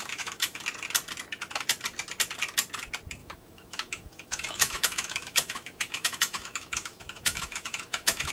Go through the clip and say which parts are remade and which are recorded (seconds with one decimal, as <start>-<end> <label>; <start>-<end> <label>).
0.0-0.6 remade; 0.6-3.2 recorded; 3.2-8.3 remade